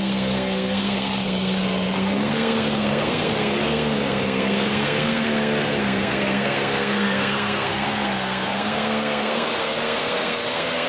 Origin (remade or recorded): remade